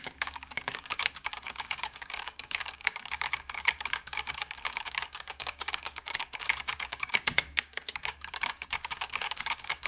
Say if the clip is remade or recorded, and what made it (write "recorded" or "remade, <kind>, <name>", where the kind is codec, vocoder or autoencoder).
remade, codec, DAC